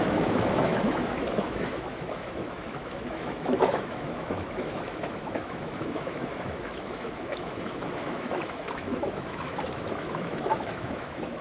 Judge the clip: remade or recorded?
remade